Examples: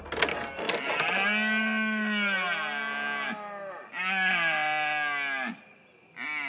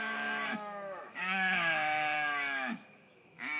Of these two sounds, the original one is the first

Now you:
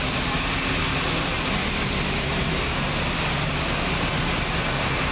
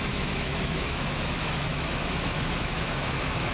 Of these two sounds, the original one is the first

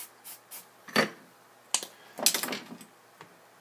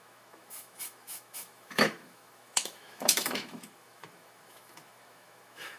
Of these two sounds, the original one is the first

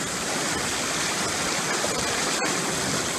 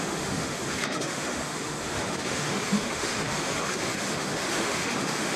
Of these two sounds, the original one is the first